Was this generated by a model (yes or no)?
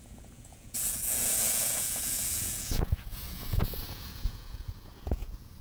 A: yes